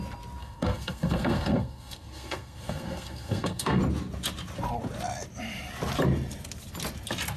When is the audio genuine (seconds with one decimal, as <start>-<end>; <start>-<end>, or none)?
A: 0.0-0.4; 3.8-7.4